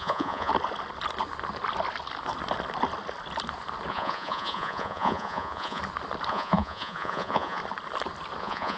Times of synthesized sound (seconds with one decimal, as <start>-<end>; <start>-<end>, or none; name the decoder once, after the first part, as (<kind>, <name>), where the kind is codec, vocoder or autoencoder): 0.0-0.5 (vocoder, Vocos); 3.9-5.8; 6.3-7.6; 8.4-8.8